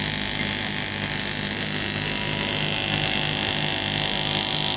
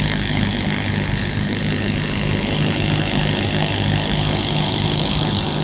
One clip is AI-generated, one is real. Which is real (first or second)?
first